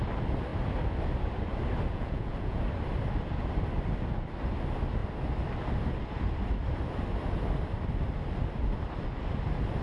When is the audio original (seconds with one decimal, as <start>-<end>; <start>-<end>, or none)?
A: 0.0-1.9; 2.6-9.8